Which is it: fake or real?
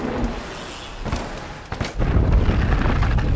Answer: real